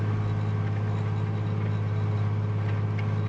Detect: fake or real real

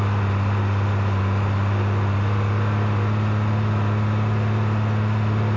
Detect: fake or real real